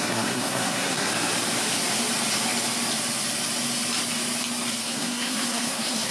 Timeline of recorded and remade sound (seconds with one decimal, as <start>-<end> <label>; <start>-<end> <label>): 0.0-1.1 remade; 1.1-4.8 recorded; 4.8-6.1 remade